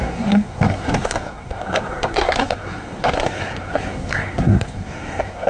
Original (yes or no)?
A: no